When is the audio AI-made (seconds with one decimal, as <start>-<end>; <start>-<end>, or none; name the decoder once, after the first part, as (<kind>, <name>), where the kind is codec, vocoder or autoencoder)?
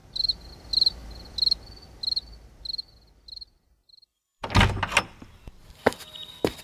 0.0-0.5 (vocoder, BigVGAN v2)